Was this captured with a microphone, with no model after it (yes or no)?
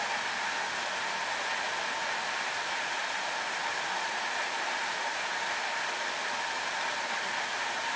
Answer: yes